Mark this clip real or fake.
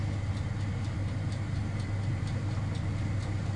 real